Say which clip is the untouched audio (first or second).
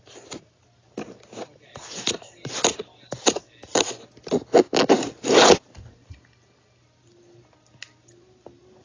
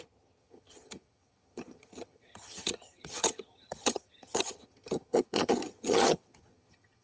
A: first